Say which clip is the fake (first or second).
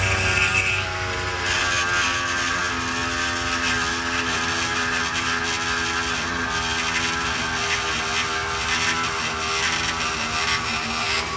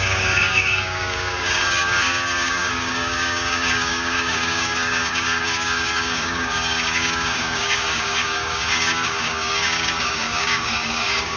second